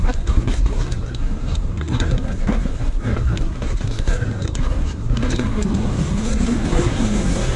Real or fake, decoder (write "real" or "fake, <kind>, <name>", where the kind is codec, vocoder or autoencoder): fake, codec, SNAC